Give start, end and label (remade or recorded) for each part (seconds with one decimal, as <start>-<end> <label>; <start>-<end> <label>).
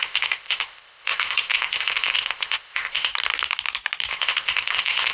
0.0-3.1 remade; 3.1-4.1 recorded; 4.1-5.1 remade